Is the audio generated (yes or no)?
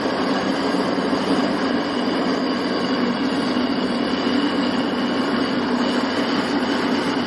no